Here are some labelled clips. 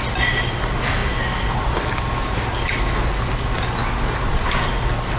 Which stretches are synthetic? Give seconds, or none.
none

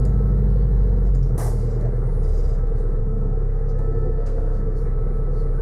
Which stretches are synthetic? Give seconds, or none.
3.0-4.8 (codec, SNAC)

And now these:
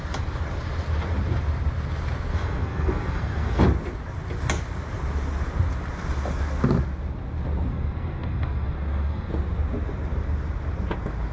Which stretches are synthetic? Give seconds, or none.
2.3-3.6 (codec, SNAC); 7.7-9.3

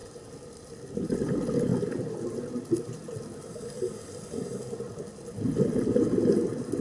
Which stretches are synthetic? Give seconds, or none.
none

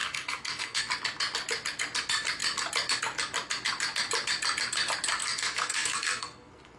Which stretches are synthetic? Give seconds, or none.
0.0-0.8 (codec, SNAC); 5.2-6.8

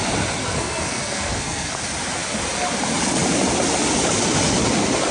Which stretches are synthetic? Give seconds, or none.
0.4-1.8 (codec, SNAC)